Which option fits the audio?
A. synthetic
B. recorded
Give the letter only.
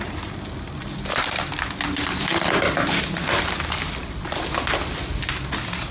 B